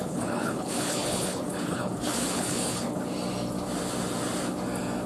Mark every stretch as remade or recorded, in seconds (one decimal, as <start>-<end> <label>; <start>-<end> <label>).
0.0-3.0 remade; 3.0-5.1 recorded